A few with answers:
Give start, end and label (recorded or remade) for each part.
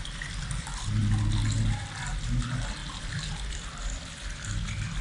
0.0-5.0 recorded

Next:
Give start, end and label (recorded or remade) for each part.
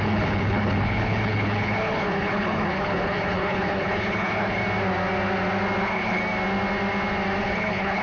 0.0-4.6 remade; 4.6-5.8 recorded; 5.8-6.2 remade; 6.2-7.4 recorded; 7.4-8.0 remade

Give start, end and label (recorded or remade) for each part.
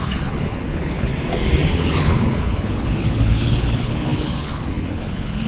0.0-1.1 remade; 1.1-1.7 recorded; 1.7-5.5 remade